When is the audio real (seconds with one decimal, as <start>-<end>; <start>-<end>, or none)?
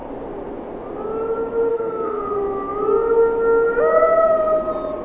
0.0-1.7; 2.2-5.0